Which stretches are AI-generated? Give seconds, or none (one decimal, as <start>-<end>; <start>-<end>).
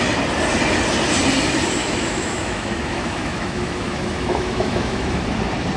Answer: 1.8-5.2